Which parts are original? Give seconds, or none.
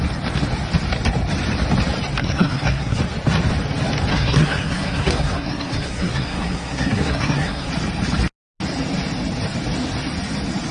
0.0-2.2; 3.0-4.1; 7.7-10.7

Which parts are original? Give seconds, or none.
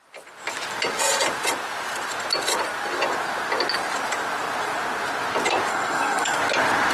0.0-5.7; 6.4-6.9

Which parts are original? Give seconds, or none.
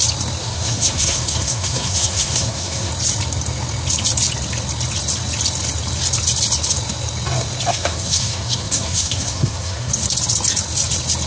0.0-0.4; 2.9-7.7; 9.9-11.3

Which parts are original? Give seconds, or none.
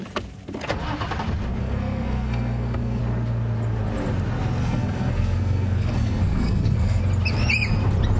0.0-1.6; 3.0-4.6; 7.0-8.2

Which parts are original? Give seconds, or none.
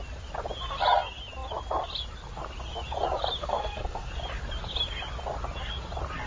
0.0-3.4; 4.1-6.3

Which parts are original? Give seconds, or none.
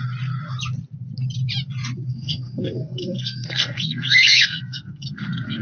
0.0-2.1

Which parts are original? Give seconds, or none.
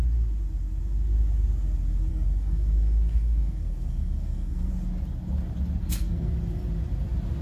0.0-2.1; 4.7-5.8; 6.3-7.4